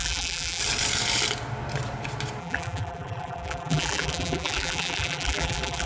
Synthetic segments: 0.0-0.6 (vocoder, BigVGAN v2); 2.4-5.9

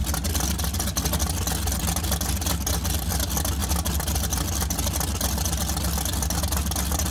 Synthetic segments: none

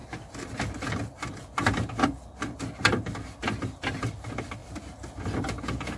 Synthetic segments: none

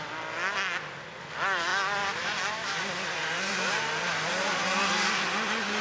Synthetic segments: none

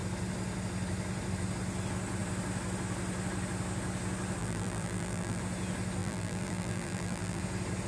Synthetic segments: 4.4-5.4 (vocoder, BigVGAN v2); 6.0-7.4

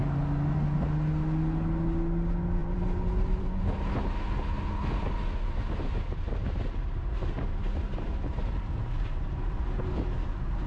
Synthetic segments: 2.6-3.5 (vocoder, BigVGAN v2); 8.3-9.6

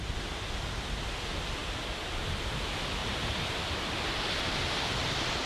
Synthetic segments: 1.6-2.1 (vocoder, BigVGAN v2); 3.0-4.6

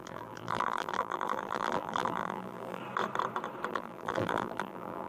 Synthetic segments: 0.0-2.8 (vocoder, BigVGAN v2); 3.7-5.1